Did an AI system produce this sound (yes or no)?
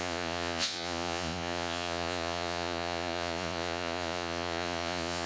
yes